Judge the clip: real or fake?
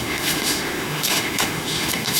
fake